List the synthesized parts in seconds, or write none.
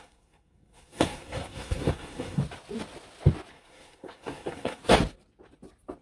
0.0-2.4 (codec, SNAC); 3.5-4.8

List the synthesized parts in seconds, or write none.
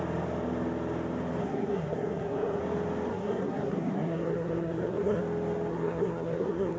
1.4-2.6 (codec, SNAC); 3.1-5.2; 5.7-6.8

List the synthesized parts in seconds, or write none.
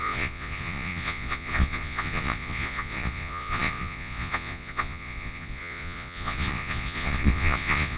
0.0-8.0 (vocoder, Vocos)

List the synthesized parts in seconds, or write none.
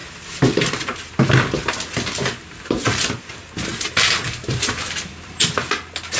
3.7-5.7 (vocoder, BigVGAN v2)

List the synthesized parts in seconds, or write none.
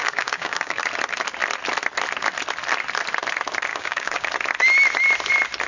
0.0-0.8 (codec, DAC); 3.7-4.3